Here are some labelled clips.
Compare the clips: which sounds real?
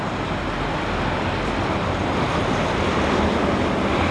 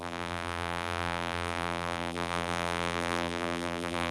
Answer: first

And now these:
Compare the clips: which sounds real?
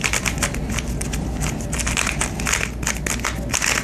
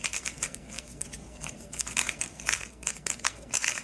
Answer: first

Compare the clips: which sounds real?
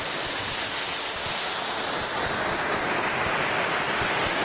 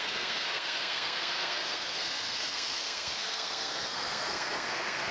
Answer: first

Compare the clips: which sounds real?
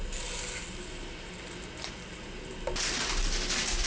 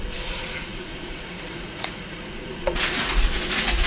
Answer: first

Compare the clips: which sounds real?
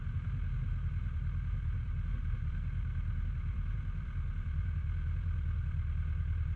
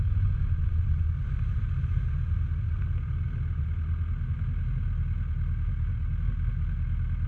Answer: second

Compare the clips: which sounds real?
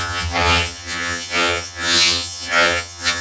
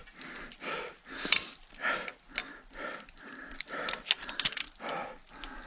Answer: second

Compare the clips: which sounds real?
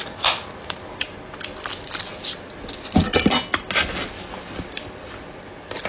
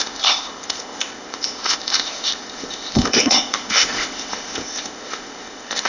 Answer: first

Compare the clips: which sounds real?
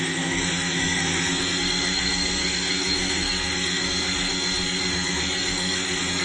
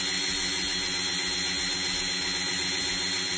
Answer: second